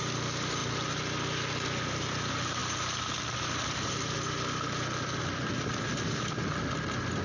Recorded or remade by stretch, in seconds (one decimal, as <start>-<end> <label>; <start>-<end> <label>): 0.0-7.2 recorded